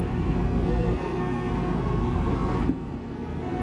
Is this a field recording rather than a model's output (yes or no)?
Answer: no